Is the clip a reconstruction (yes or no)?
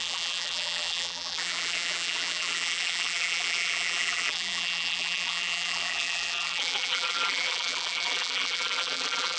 yes